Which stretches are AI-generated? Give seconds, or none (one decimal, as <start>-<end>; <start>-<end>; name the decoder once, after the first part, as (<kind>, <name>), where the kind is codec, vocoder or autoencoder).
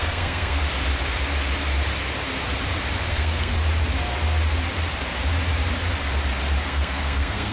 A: 0.0-0.6 (codec, SNAC); 3.1-3.5; 6.6-7.5